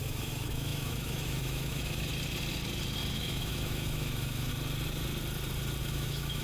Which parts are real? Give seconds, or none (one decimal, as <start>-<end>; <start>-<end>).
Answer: 2.1-3.1; 4.5-5.8